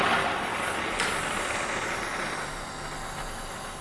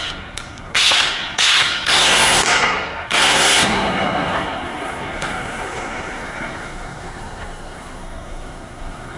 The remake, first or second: second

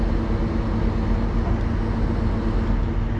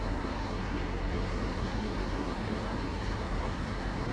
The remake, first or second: second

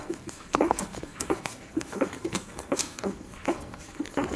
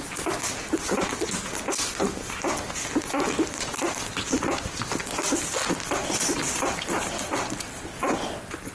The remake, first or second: first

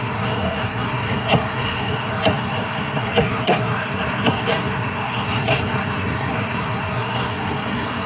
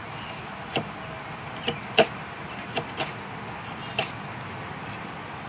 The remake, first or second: first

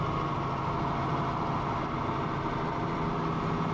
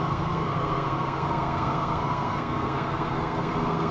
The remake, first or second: second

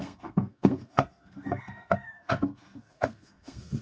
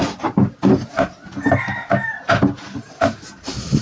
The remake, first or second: first